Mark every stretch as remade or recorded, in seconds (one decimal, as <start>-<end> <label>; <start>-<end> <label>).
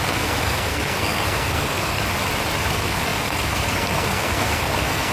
0.0-2.0 remade; 2.0-2.7 recorded; 2.7-5.1 remade